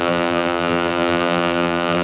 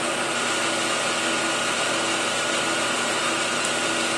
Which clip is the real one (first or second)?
second